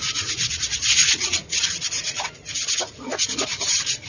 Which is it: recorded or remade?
remade